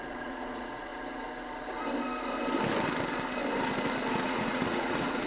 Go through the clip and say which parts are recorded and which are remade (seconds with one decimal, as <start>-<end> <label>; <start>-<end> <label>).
0.0-0.9 remade; 0.9-4.1 recorded; 4.1-5.3 remade